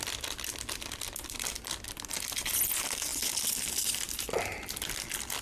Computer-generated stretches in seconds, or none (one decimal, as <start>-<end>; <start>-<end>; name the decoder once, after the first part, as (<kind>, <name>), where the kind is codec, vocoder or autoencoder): none